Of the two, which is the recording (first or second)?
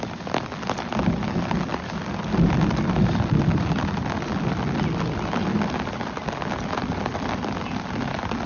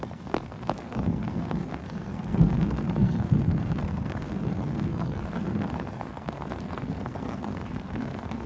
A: first